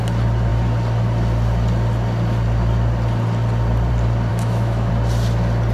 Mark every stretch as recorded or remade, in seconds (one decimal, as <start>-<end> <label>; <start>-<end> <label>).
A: 0.0-4.3 recorded; 4.3-4.9 remade; 4.9-5.7 recorded